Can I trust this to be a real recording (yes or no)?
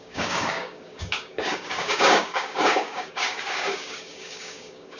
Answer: no